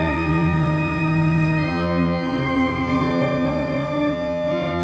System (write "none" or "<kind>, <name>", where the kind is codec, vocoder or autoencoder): vocoder, WaveNeXt